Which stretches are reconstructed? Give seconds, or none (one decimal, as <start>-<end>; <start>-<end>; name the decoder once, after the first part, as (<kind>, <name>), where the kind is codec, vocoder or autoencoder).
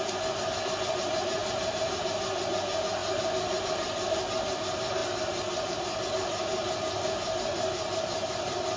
1.4-2.1 (vocoder, BigVGAN v2)